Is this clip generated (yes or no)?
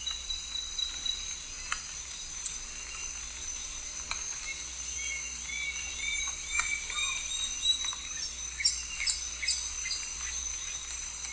no